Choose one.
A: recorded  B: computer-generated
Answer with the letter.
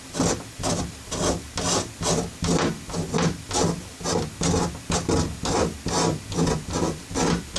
A